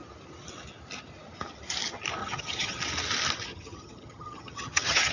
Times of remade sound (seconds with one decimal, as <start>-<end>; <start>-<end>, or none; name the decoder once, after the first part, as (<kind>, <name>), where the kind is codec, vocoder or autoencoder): 2.2-2.8 (vocoder, HiFi-GAN); 3.5-5.1